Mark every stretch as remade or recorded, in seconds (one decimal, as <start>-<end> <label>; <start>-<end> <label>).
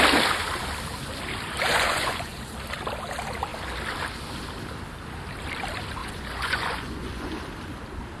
0.0-1.7 recorded; 1.7-2.5 remade; 2.5-6.0 recorded; 6.0-7.4 remade; 7.4-8.2 recorded